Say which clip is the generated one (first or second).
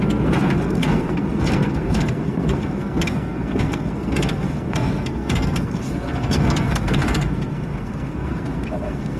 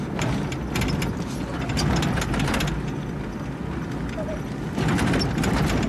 first